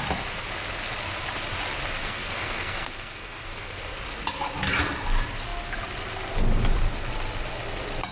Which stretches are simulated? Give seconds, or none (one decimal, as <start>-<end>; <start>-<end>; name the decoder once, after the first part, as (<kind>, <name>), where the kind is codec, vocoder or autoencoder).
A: 2.0-3.8 (codec, SNAC)